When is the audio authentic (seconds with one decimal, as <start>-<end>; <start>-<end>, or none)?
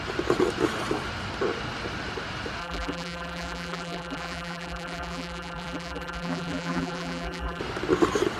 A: 0.0-2.6; 7.6-8.4